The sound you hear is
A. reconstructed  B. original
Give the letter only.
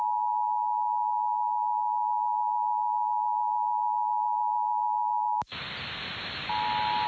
B